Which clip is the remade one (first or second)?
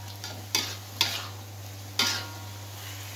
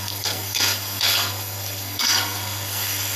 second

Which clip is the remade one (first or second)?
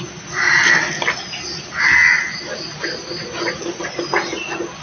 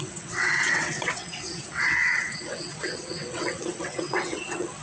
second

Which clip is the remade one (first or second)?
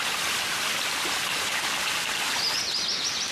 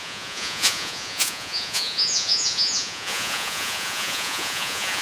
second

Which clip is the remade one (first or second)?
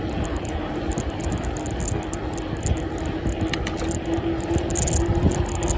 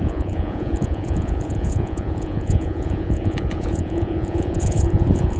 second